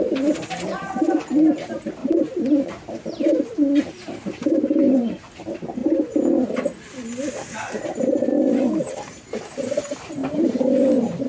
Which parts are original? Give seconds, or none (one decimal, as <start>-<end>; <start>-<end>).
5.8-7.3